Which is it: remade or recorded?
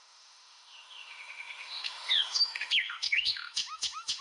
remade